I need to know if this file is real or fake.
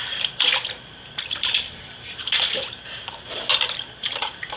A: fake